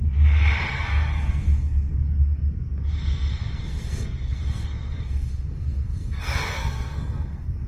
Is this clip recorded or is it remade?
remade